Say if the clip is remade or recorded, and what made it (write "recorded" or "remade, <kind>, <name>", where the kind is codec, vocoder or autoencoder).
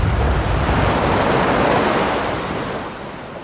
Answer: recorded